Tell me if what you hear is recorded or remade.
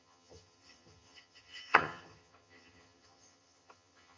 remade